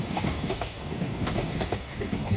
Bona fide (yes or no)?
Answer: no